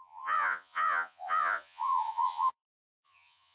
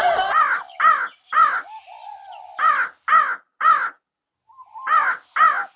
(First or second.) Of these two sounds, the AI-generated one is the first